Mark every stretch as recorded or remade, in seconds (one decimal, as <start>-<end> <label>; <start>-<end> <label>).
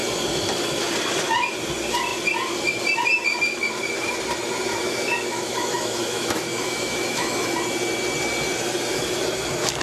0.0-4.7 recorded; 4.7-7.5 remade; 7.5-9.8 recorded